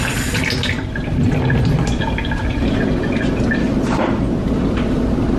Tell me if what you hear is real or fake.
fake